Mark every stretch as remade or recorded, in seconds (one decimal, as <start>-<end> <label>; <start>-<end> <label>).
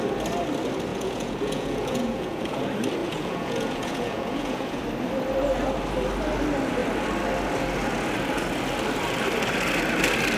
0.0-0.9 recorded; 0.9-2.6 remade; 2.6-3.0 recorded; 3.0-4.8 remade; 4.8-10.4 recorded